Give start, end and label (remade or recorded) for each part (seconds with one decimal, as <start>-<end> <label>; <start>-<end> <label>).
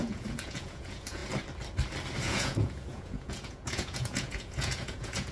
0.0-1.2 remade; 1.2-2.2 recorded; 2.2-5.3 remade